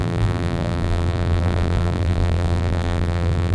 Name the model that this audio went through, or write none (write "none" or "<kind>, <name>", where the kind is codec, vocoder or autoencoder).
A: vocoder, BigVGAN v2